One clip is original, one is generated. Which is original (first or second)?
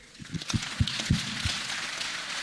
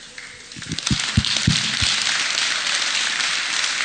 second